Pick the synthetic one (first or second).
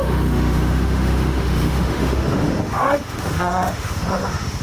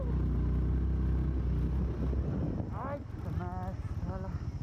first